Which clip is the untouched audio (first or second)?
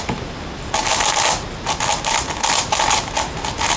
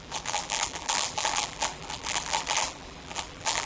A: first